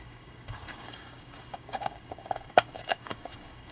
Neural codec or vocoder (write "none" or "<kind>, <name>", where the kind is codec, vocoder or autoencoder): codec, DAC